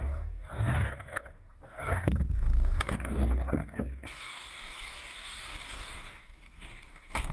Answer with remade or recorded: remade